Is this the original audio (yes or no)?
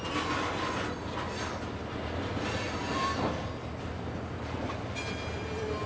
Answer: yes